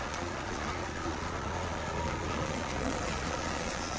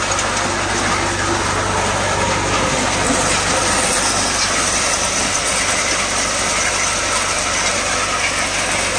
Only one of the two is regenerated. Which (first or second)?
first